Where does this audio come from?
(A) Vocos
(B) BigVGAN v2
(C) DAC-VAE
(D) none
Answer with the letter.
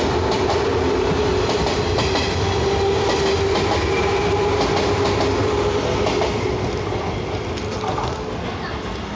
D